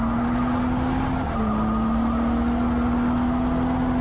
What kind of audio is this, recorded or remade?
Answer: recorded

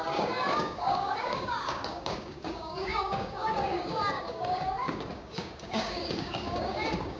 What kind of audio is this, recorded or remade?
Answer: remade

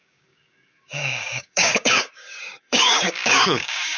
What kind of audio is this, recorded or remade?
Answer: remade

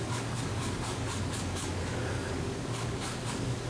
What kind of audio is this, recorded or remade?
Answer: remade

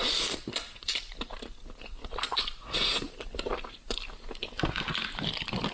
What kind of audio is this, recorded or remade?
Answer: recorded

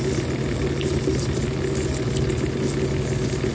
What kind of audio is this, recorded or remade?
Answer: recorded